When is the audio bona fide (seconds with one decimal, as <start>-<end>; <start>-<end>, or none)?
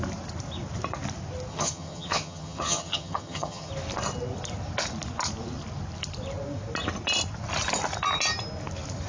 0.0-1.5; 3.7-9.1